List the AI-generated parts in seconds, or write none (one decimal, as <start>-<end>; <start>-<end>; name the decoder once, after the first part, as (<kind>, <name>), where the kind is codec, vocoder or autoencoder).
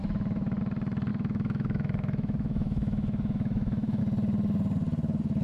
0.0-0.6 (autoencoder, DAC-VAE); 1.1-4.0